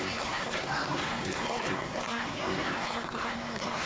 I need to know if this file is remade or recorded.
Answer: remade